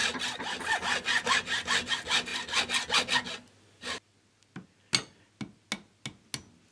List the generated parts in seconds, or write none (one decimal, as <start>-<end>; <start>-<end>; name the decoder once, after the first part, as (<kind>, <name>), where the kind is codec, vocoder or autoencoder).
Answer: none